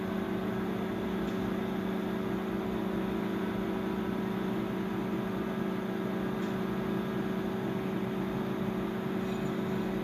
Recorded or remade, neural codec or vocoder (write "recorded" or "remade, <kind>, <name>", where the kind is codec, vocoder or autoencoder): recorded